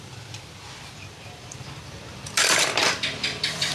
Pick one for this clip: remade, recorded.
remade